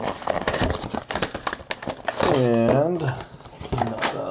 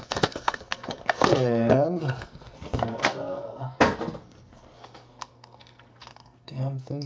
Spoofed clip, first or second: second